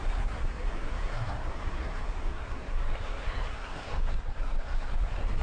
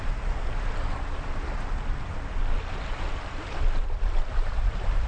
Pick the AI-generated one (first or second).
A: first